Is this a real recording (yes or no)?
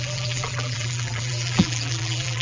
no